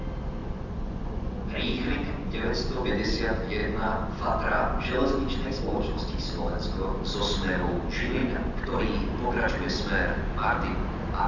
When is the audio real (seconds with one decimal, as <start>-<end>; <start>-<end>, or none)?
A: 0.0-0.4; 3.2-3.6; 5.6-8.2; 8.8-11.3